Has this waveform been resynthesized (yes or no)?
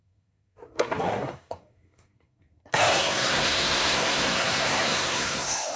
yes